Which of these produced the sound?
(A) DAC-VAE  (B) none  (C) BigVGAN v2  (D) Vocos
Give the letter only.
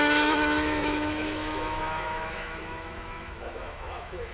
A